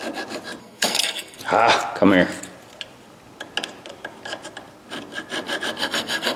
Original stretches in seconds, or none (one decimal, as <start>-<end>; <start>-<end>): 0.0-0.6; 1.4-5.8